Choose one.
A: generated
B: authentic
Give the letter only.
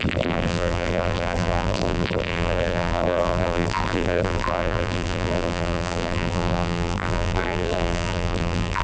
A